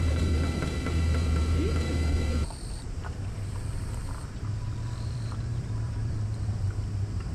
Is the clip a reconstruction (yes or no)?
yes